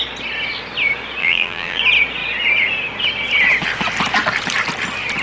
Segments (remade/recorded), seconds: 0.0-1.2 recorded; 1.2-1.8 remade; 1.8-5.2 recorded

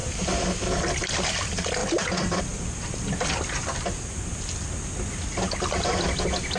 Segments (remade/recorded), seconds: 0.0-1.8 recorded; 1.8-2.4 remade; 2.4-6.6 recorded

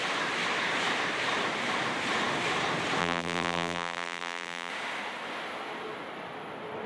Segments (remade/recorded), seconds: 0.0-3.0 recorded; 3.0-4.7 remade; 4.7-6.9 recorded

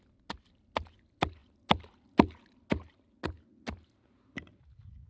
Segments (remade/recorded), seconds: 0.0-5.1 recorded

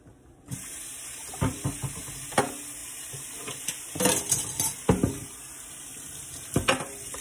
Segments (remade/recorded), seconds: 0.0-7.2 recorded

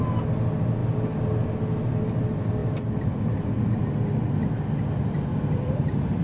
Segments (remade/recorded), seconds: 0.0-0.8 recorded; 0.8-1.4 remade; 1.4-2.6 recorded; 2.6-3.9 remade; 3.9-5.3 recorded; 5.3-6.2 remade

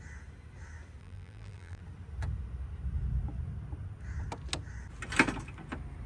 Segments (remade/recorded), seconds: 0.0-1.0 recorded; 1.0-1.8 remade; 1.8-6.1 recorded

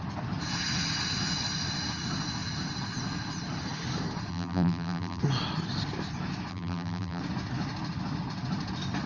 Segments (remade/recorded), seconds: 0.0-4.3 recorded; 4.3-5.2 remade; 5.2-6.5 recorded; 6.5-7.2 remade; 7.2-9.1 recorded